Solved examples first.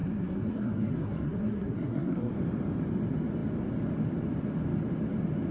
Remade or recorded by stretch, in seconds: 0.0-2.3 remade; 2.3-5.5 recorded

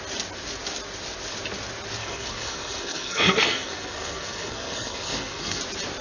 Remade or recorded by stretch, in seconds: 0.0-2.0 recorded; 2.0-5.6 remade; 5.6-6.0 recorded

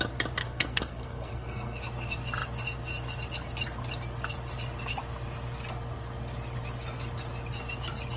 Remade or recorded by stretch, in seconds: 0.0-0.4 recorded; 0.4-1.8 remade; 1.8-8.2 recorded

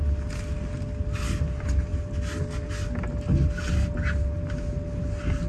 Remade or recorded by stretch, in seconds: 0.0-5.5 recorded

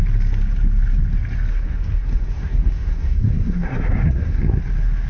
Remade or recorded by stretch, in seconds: 0.0-1.5 recorded; 1.5-4.6 remade; 4.6-5.1 recorded

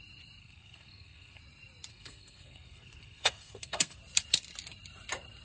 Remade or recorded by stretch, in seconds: 0.0-0.4 recorded; 0.4-1.4 remade; 1.4-1.9 recorded; 1.9-4.0 remade; 4.0-5.4 recorded

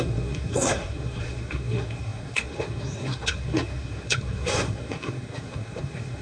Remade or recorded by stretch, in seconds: 0.0-6.2 remade